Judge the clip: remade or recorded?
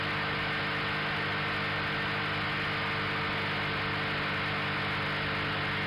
recorded